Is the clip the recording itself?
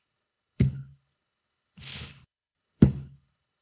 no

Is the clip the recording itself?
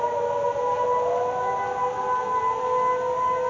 yes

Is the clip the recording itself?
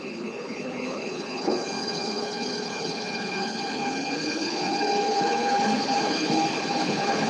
no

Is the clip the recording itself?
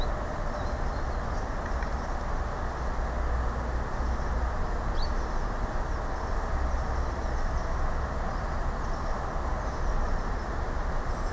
yes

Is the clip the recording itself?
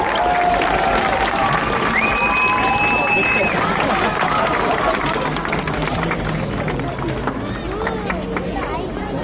yes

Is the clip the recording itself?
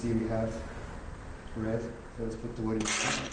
yes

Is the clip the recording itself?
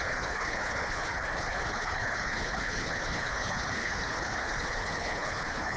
no